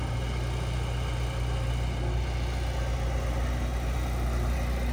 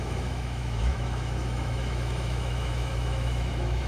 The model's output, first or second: second